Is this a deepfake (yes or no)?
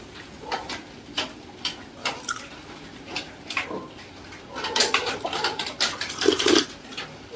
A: no